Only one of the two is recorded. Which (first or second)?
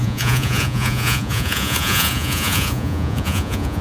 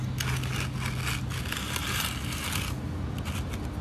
second